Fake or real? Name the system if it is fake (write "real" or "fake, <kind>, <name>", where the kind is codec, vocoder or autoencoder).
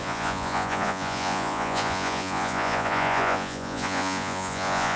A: fake, vocoder, Vocos